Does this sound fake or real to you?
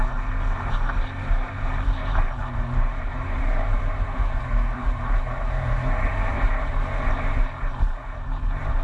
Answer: fake